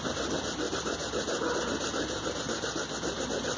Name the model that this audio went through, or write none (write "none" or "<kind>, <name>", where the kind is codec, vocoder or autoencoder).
none